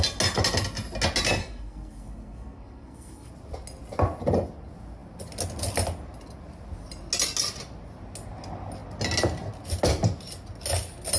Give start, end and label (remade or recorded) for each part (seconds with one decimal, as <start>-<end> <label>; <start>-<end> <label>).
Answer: 0.0-1.4 recorded; 1.4-3.3 remade; 3.3-11.2 recorded